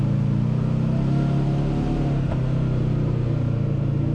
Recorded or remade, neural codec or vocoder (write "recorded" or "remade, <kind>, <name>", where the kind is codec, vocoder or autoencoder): recorded